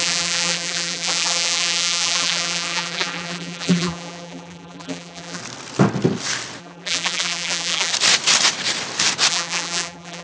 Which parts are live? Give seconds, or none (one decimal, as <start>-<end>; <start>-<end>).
5.4-6.6; 7.9-9.3